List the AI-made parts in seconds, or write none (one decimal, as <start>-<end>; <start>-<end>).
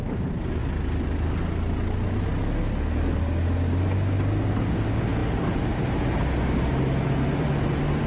none